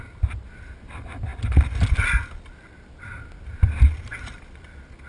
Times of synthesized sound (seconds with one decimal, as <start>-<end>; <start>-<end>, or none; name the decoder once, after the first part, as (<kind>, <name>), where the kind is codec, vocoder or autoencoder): none